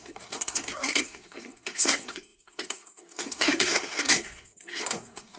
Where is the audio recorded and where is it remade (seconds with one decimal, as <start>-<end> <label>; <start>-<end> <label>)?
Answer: 0.0-5.4 remade